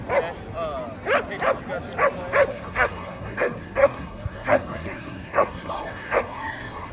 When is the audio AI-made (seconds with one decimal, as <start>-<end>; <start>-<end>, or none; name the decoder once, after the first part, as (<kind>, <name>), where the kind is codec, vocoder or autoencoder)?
2.5-6.9 (codec, SNAC)